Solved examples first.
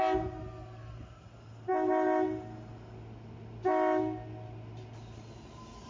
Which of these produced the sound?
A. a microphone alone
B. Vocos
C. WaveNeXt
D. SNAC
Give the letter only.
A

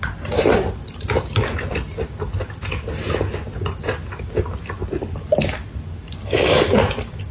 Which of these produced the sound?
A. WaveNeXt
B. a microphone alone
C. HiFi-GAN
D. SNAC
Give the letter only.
B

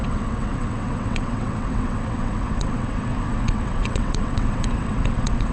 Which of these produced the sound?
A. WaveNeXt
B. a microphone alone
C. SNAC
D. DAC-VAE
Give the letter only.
A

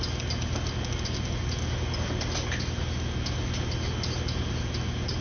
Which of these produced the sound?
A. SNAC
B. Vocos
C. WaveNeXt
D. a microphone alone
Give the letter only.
D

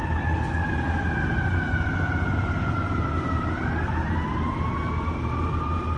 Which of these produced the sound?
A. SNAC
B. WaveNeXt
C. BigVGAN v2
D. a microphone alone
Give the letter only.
D